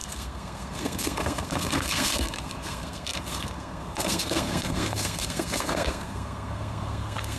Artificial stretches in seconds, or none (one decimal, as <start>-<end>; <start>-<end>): 0.0-7.4